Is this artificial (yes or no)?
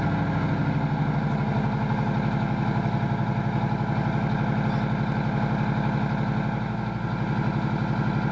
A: no